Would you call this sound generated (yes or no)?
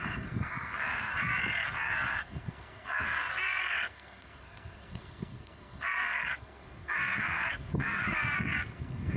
yes